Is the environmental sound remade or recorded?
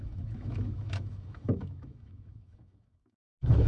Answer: remade